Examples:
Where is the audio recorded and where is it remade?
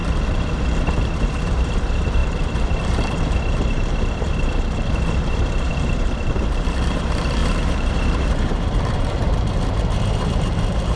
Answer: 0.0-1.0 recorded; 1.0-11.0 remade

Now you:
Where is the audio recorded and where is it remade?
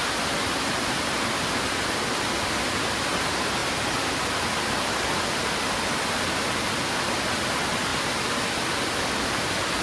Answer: 0.0-7.9 recorded; 7.9-8.4 remade; 8.4-9.8 recorded